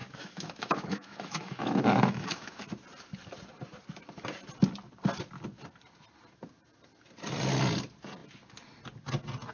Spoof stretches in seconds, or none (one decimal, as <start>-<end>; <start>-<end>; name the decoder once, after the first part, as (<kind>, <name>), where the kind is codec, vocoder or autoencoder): 0.0-2.6 (autoencoder, DAC-VAE)